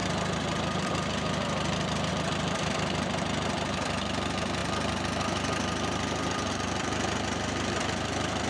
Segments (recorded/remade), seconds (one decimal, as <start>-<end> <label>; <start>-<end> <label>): 0.0-8.5 recorded